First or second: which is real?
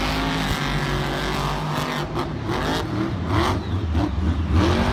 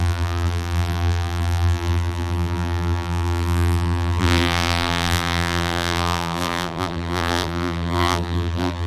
first